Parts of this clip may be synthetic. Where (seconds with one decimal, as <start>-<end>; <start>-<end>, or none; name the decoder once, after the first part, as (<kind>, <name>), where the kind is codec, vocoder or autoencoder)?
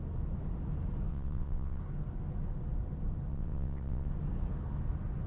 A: 1.1-1.8 (vocoder, WaveNeXt); 3.3-4.1